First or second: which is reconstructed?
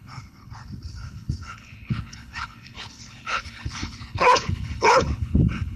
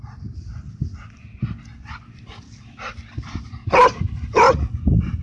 first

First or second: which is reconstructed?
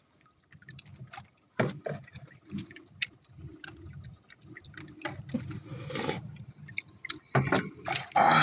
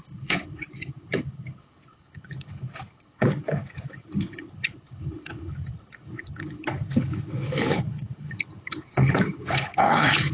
second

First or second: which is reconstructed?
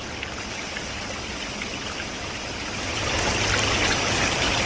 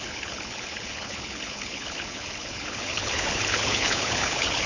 second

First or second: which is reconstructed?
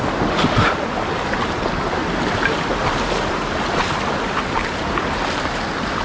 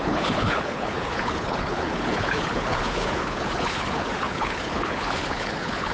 second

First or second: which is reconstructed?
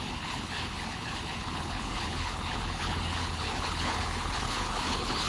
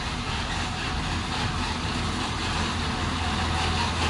first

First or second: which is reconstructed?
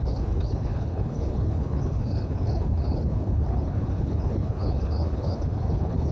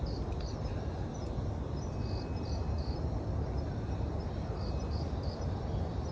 first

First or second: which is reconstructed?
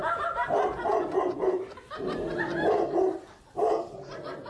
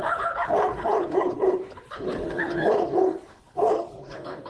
second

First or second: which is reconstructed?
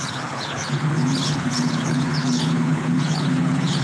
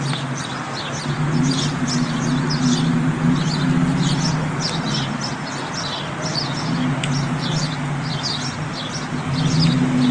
first